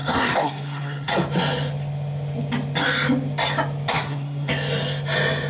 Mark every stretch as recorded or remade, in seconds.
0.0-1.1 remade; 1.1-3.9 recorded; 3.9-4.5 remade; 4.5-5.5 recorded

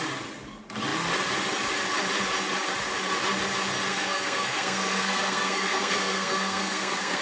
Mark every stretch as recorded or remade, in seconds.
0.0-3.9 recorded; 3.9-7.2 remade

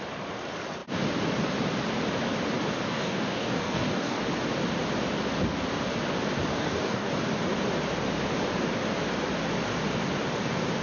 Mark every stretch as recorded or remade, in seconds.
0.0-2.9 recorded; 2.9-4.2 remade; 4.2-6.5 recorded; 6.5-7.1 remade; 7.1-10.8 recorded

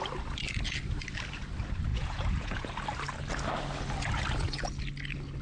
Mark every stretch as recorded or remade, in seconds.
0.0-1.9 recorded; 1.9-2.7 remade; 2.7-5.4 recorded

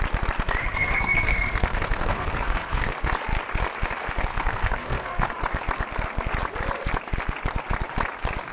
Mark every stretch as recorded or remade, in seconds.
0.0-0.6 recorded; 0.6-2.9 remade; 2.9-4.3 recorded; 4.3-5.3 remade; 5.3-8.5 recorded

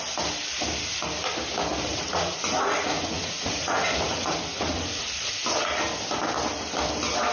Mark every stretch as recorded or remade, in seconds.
0.0-1.9 recorded; 1.9-5.3 remade; 5.3-7.3 recorded